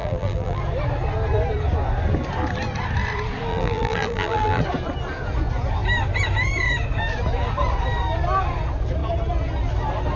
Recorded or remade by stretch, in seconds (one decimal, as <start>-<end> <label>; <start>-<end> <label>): 0.0-0.6 remade; 0.6-3.5 recorded; 3.5-4.6 remade; 4.6-10.2 recorded